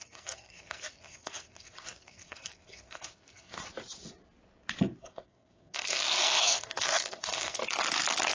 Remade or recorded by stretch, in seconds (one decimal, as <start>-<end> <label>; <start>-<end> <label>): 0.0-3.5 remade; 3.5-5.0 recorded; 5.0-7.6 remade; 7.6-8.3 recorded